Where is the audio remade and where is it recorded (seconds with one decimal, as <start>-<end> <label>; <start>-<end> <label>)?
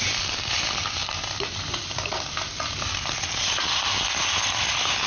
0.0-5.1 recorded